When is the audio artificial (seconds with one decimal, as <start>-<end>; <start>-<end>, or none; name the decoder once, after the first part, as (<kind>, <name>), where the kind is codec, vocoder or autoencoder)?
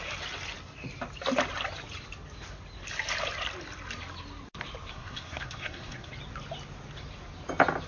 4.9-6.1 (codec, SNAC)